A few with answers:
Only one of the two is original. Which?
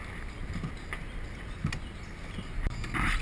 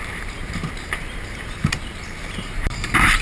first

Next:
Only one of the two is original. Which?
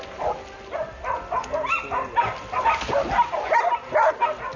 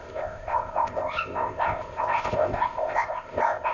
first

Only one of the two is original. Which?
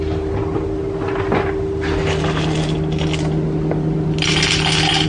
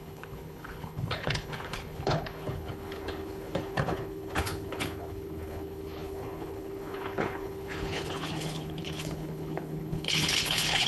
first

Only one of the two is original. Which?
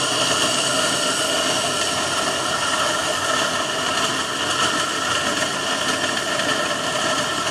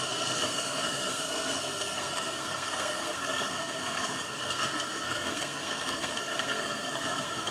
first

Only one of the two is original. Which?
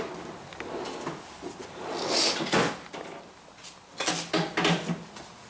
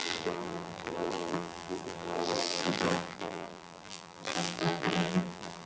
first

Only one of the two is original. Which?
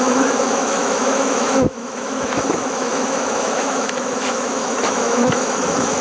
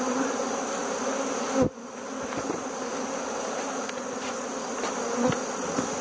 second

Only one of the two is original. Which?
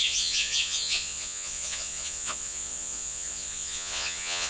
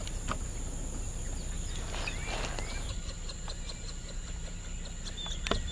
second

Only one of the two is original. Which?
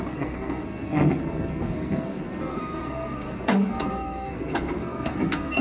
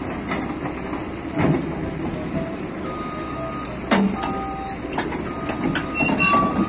second